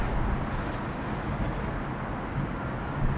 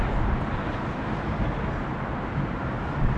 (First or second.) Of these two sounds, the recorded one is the first